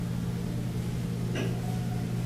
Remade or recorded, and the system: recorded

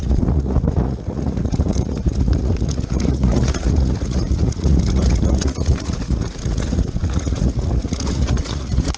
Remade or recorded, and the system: remade, vocoder, Vocos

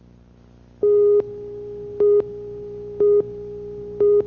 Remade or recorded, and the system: recorded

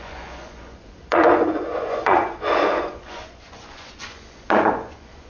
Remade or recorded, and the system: remade, vocoder, Vocos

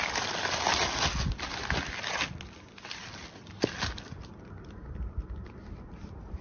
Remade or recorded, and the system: recorded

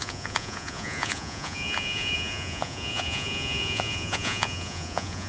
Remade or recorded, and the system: remade, vocoder, Vocos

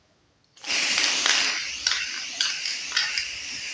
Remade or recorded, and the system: recorded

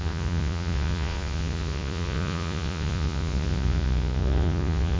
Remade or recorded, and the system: remade, vocoder, Vocos